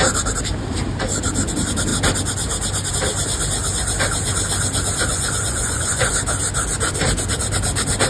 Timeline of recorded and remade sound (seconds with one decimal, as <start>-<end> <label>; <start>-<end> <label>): 0.0-5.1 recorded; 5.1-6.1 remade; 6.1-8.1 recorded